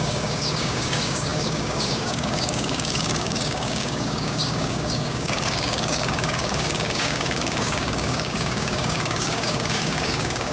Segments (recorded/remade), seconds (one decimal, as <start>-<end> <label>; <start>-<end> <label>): 0.0-10.5 remade